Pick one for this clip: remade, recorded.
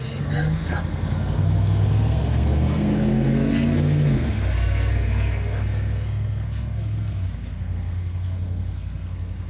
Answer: remade